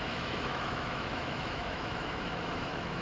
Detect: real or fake fake